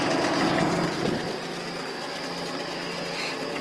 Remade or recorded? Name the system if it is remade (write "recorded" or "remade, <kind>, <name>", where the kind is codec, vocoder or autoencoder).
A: recorded